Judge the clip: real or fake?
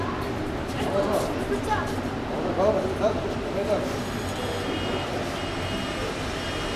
real